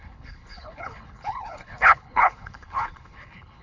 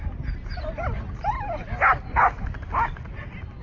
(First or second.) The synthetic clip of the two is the first